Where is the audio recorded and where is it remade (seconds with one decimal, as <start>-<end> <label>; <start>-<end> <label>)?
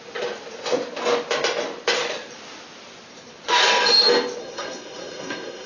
0.0-4.4 recorded; 4.4-5.7 remade